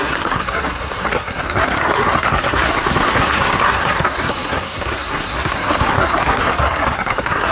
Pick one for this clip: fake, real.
fake